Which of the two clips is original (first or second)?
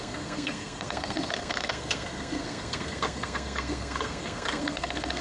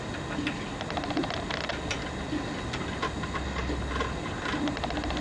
second